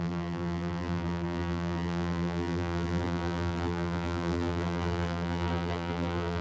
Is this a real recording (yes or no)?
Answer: no